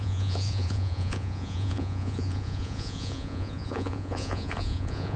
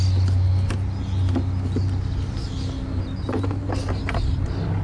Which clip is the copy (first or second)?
first